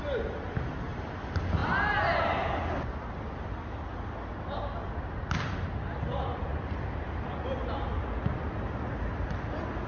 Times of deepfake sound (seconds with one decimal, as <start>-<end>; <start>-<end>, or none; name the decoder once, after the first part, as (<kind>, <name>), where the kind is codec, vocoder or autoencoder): none

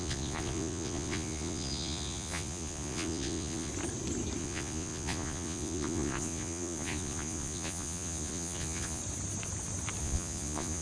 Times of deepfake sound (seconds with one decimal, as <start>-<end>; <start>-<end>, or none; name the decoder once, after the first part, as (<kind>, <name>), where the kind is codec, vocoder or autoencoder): 0.0-3.7 (vocoder, Vocos); 4.4-9.0; 10.0-10.8

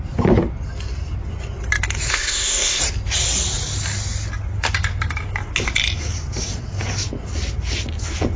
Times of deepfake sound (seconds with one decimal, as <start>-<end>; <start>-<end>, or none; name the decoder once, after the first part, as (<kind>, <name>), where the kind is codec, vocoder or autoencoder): 2.1-2.8 (codec, ZipCodec)

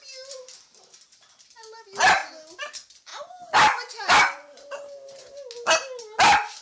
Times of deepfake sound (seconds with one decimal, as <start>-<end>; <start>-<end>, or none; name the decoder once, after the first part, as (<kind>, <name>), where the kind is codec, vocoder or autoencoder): none

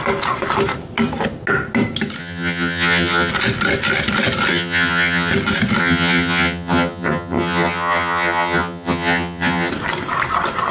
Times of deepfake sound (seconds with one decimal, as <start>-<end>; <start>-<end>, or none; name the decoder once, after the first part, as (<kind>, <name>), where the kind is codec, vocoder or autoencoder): 2.2-3.3 (vocoder, HiFi-GAN); 4.5-5.3; 5.8-9.7

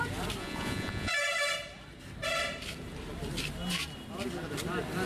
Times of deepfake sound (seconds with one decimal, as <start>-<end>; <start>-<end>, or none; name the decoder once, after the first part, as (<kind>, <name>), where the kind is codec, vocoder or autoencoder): 0.4-1.1 (vocoder, Vocos)